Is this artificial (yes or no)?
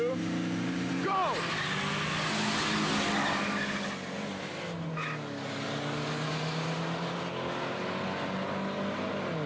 no